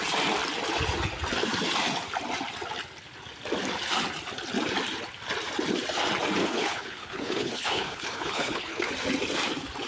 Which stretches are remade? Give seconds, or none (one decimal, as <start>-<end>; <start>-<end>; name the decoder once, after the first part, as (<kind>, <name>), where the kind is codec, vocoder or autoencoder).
6.4-8.9 (codec, HILCodec)